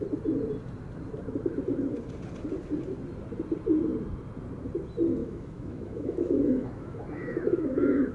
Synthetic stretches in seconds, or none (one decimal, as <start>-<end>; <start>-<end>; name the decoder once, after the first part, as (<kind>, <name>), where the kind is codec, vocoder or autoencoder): 5.2-8.1 (autoencoder, DAC-VAE)